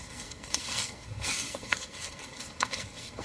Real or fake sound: fake